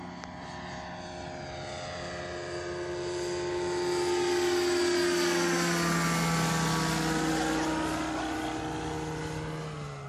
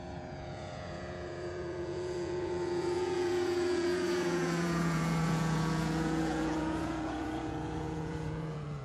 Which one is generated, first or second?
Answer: second